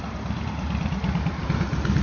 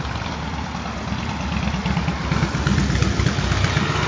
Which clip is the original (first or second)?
second